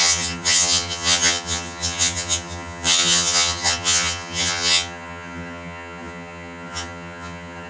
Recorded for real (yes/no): no